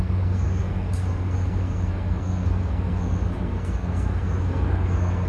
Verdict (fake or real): fake